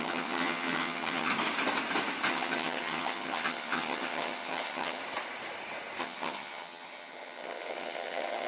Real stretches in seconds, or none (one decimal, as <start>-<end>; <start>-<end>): 1.3-2.3; 5.0-6.0